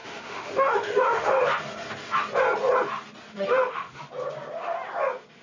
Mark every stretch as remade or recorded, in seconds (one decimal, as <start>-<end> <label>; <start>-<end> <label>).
0.0-1.4 remade; 1.4-3.3 recorded; 3.3-4.0 remade; 4.0-5.4 recorded